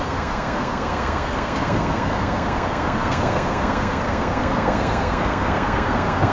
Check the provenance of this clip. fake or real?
fake